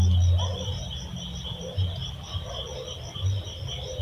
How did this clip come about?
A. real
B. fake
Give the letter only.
A